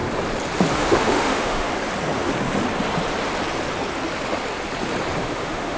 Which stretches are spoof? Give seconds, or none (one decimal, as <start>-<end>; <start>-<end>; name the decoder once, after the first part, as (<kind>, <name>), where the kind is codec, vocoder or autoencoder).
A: 0.7-1.7 (autoencoder, DAC-VAE); 5.2-5.8

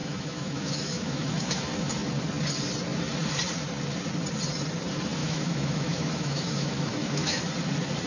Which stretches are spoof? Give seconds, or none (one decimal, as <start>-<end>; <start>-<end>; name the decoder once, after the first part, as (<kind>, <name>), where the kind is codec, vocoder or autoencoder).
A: 0.0-1.6 (autoencoder, DAC-VAE); 5.2-7.4

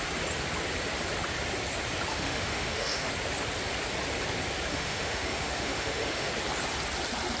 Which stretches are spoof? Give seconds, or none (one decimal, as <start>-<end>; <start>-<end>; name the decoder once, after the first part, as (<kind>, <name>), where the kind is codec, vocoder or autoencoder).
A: 2.1-3.1 (autoencoder, DAC-VAE); 4.7-6.3